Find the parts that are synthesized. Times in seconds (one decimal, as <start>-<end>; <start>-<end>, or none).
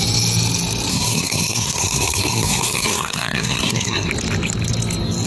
0.9-4.1